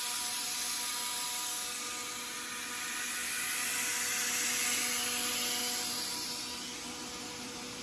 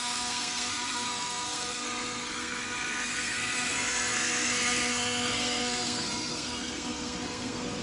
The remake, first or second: second